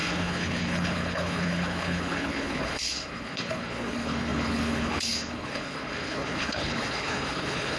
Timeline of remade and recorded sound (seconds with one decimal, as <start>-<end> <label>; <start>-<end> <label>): 0.0-7.8 remade